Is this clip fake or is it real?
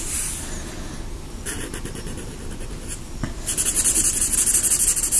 real